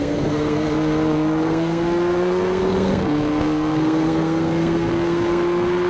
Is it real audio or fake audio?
fake